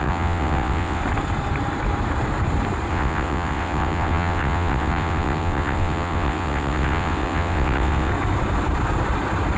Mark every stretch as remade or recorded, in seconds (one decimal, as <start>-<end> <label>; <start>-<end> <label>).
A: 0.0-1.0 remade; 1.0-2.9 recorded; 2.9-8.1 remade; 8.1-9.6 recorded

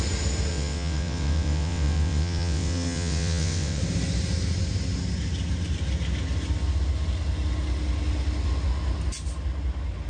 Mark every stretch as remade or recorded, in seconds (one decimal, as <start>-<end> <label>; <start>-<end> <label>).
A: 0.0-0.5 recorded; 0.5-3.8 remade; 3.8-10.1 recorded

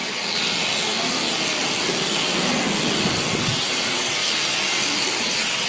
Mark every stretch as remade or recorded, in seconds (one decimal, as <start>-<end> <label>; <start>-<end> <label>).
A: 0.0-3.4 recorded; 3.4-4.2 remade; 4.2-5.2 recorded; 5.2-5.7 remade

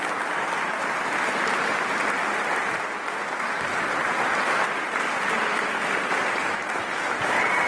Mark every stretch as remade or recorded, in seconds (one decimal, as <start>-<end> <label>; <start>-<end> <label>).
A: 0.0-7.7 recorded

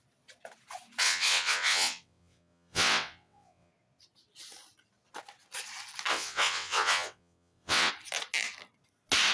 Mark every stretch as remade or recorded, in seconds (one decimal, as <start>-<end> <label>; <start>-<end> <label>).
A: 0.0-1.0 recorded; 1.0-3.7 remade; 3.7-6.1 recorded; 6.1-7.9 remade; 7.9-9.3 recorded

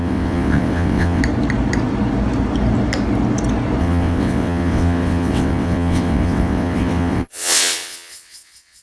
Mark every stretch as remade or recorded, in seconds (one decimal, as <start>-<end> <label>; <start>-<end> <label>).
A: 0.0-1.2 remade; 1.2-3.8 recorded; 3.8-8.8 remade

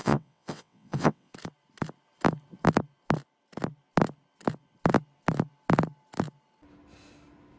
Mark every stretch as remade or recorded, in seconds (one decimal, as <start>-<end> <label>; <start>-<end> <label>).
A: 0.0-1.3 remade; 1.3-7.6 recorded

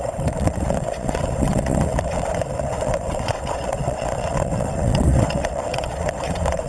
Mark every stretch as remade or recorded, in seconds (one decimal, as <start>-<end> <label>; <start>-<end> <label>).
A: 0.0-6.7 remade